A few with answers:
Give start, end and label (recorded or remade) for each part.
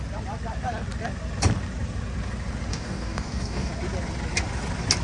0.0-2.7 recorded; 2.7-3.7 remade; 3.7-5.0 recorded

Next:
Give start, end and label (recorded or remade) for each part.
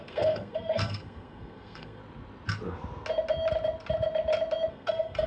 0.0-2.0 remade; 2.0-4.7 recorded; 4.7-5.3 remade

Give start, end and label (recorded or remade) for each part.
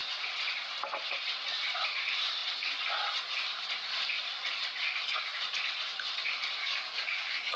0.0-6.6 recorded; 6.6-7.6 remade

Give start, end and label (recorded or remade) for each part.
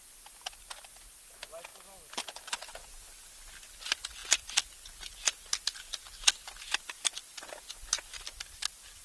0.0-1.7 recorded; 1.7-3.3 remade; 3.3-9.0 recorded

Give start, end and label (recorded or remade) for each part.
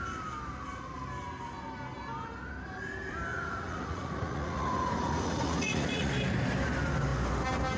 0.0-3.3 recorded; 3.3-6.1 remade; 6.1-7.8 recorded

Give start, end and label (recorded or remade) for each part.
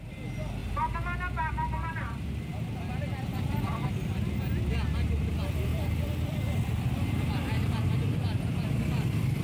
0.0-2.5 recorded; 2.5-5.3 remade; 5.3-5.7 recorded; 5.7-7.3 remade; 7.3-9.4 recorded